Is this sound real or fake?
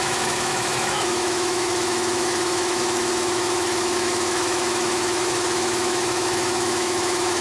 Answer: fake